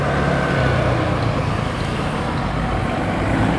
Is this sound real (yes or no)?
yes